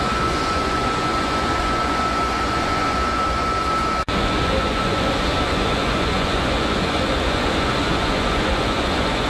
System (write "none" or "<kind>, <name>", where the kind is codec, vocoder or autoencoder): vocoder, Vocos